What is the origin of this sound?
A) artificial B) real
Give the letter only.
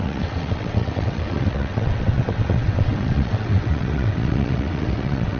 A